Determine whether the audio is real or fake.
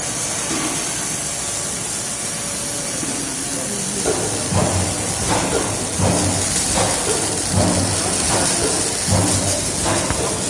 real